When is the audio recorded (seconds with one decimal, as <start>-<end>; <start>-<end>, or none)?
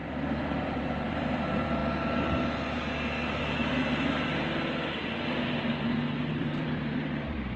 1.8-6.3